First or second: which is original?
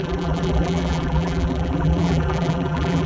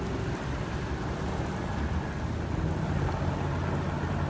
second